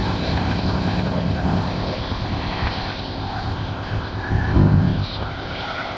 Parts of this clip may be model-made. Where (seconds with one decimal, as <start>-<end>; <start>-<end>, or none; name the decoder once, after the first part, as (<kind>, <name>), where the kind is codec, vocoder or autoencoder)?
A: 0.0-6.0 (codec, ZipCodec)